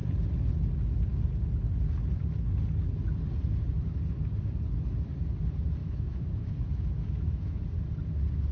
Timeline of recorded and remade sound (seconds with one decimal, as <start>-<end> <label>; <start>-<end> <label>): 0.0-5.8 recorded; 5.8-7.6 remade; 7.6-8.5 recorded